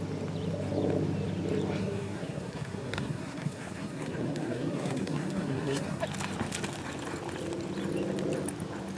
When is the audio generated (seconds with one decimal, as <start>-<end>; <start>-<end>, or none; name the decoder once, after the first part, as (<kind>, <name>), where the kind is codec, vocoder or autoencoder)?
1.8-6.0 (codec, SNAC)